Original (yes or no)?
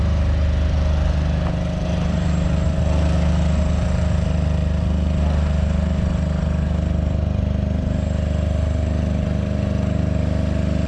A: yes